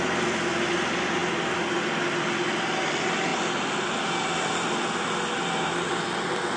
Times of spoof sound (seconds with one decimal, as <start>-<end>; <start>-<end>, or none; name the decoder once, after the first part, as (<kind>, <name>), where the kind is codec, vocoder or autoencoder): none